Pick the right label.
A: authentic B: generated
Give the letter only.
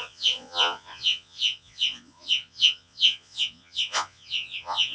B